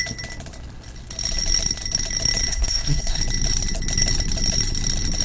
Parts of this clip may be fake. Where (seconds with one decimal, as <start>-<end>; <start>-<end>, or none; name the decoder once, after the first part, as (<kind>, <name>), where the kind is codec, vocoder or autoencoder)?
2.5-3.2 (codec, SNAC)